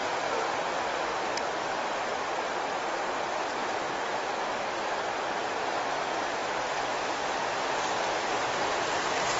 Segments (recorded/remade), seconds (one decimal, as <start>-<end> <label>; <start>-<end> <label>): 0.0-9.4 recorded